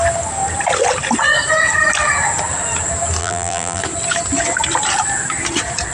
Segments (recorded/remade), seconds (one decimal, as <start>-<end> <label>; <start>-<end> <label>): 0.0-3.2 recorded; 3.2-3.8 remade; 3.8-5.9 recorded